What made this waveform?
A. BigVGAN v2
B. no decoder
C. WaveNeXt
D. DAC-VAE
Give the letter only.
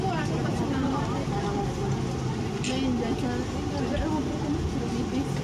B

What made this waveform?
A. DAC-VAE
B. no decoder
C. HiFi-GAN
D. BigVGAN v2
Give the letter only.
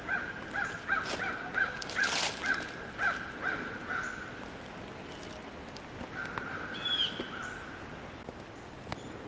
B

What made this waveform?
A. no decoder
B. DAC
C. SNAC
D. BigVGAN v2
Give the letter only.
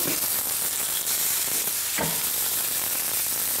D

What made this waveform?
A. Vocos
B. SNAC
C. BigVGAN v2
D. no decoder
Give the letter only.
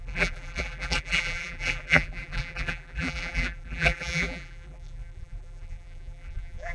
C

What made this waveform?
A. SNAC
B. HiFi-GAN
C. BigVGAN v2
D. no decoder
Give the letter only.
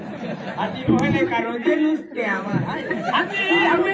C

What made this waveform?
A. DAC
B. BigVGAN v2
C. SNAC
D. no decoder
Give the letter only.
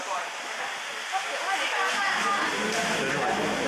D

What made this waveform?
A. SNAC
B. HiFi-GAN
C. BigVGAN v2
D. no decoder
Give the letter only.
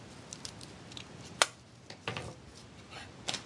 D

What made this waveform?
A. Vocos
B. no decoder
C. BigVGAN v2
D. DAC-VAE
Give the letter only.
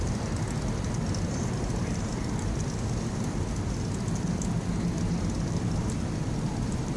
B